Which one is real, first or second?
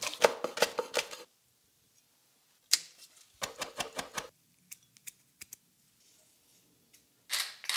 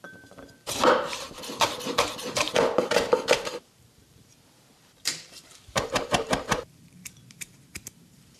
first